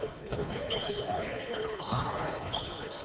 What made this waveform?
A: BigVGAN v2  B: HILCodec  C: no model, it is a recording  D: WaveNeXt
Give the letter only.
B